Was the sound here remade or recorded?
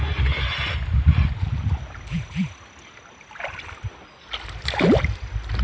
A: recorded